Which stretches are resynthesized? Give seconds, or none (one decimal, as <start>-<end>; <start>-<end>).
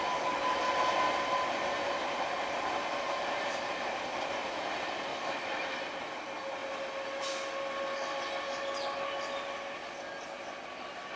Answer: 5.1-5.8